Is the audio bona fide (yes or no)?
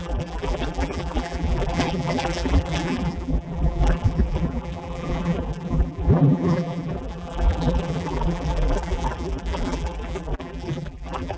no